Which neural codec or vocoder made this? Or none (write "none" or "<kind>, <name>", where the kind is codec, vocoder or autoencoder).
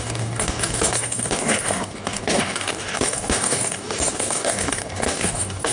codec, DAC